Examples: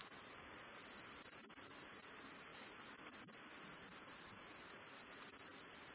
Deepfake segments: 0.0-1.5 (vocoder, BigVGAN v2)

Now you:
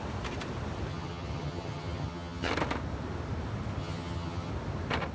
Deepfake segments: 0.9-2.5 (vocoder, HiFi-GAN); 3.8-4.5

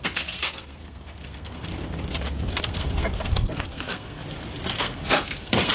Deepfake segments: 0.0-1.7 (codec, SNAC); 2.5-4.2; 4.8-5.7

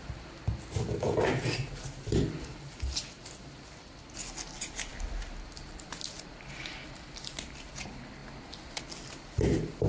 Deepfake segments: none

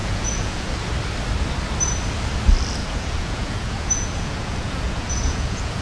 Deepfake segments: 0.0-0.7 (vocoder, Vocos); 2.8-5.8

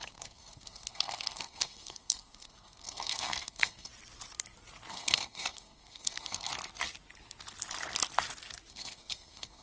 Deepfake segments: 0.0-3.9 (codec, SNAC); 4.9-6.5; 8.7-9.6

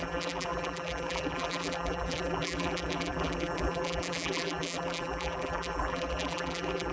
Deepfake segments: 0.0-6.9 (vocoder, BigVGAN v2)

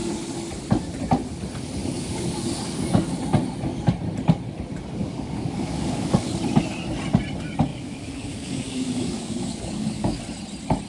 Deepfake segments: 1.8-3.2 (codec, DAC); 5.0-6.3; 7.7-10.2